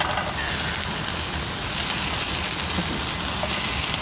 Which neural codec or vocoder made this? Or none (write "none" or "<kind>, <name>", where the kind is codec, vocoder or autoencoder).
none